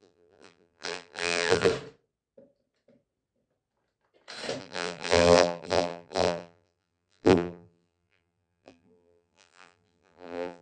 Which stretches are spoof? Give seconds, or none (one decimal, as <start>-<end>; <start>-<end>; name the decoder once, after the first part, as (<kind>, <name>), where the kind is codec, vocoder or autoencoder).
0.0-1.7 (vocoder, BigVGAN v2); 4.6-10.6